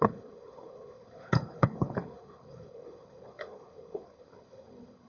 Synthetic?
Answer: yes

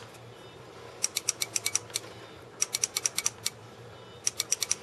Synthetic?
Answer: no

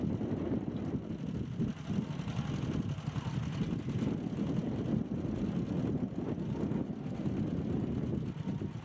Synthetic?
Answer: no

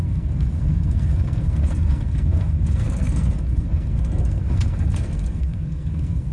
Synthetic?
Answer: yes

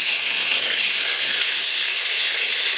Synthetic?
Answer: yes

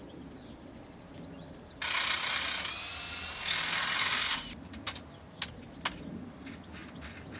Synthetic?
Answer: no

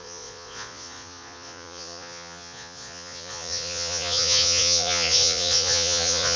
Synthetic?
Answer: yes